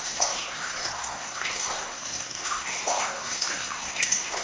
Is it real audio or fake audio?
fake